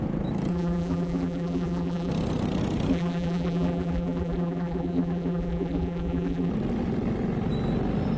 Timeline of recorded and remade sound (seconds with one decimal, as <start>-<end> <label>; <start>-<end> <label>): 0.0-0.5 recorded; 0.5-2.1 remade; 2.1-2.9 recorded; 2.9-6.5 remade; 6.5-8.2 recorded